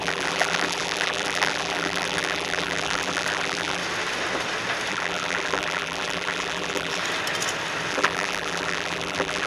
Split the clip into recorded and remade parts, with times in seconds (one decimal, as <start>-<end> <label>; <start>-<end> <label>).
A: 0.0-3.8 remade; 3.8-4.9 recorded; 4.9-7.0 remade; 7.0-7.9 recorded; 7.9-9.5 remade